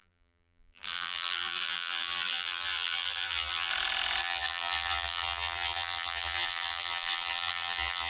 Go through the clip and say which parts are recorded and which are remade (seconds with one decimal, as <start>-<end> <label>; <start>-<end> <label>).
0.0-3.7 remade; 3.7-4.2 recorded; 4.2-8.1 remade